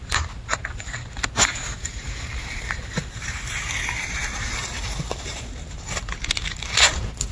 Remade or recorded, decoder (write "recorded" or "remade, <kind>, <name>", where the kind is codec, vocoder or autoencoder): remade, vocoder, BigVGAN v2